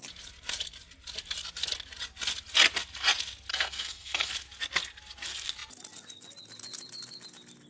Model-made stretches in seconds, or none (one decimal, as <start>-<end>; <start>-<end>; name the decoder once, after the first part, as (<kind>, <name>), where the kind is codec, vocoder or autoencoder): 3.5-4.3 (codec, SNAC)